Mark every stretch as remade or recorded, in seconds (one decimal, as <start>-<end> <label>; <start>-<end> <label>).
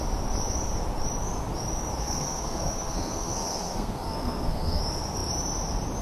0.0-2.0 recorded; 2.0-4.8 remade; 4.8-6.0 recorded